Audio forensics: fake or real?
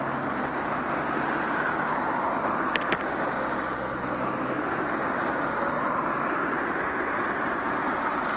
real